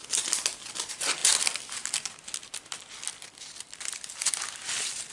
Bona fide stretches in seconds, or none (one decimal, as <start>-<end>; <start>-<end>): 0.0-5.1